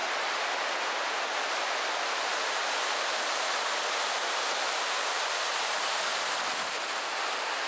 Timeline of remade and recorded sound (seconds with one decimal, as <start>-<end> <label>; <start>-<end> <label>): 0.0-7.7 recorded

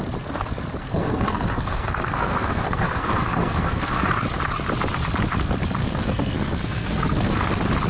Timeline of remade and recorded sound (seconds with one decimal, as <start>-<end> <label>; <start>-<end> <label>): 0.0-0.8 recorded; 0.8-4.1 remade; 4.1-5.8 recorded; 5.8-7.5 remade; 7.5-7.9 recorded

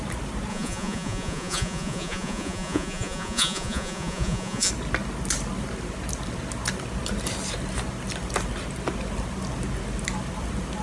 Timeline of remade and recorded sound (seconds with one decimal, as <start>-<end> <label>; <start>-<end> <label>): 0.0-0.5 recorded; 0.5-4.7 remade; 4.7-10.8 recorded

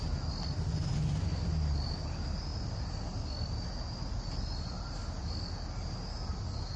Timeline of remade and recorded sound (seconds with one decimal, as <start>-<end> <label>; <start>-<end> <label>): 0.0-6.8 recorded

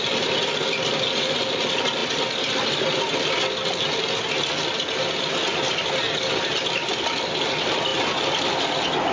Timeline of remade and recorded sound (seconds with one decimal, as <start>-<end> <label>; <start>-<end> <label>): 0.0-9.1 recorded